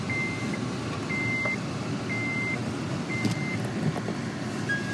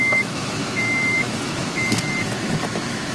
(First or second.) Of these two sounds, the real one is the first